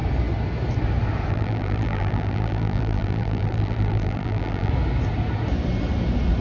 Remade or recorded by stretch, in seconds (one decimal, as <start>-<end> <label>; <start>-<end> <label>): 0.0-1.3 recorded; 1.3-4.7 remade; 4.7-6.4 recorded